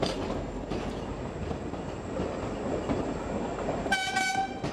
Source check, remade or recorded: recorded